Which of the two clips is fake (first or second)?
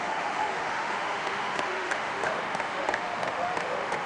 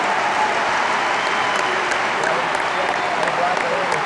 first